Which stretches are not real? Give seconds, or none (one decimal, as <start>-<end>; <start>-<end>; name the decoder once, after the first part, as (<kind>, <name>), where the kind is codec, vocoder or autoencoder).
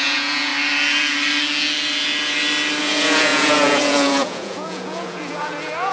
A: 0.0-0.5 (vocoder, Vocos); 2.8-5.9